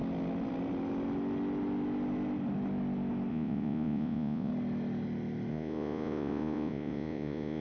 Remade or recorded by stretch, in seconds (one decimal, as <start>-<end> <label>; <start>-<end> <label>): 0.0-3.3 recorded; 3.3-4.5 remade; 4.5-5.5 recorded; 5.5-7.6 remade